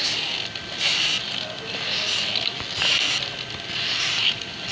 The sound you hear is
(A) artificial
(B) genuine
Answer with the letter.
B